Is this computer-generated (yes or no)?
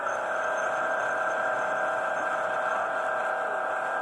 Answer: yes